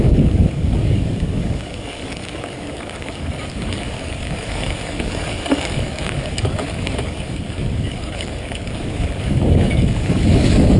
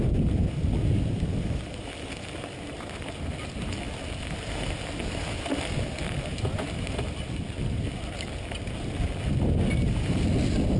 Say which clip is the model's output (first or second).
first